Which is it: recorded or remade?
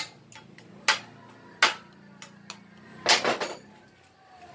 recorded